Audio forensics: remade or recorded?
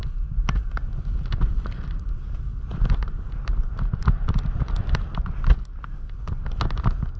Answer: recorded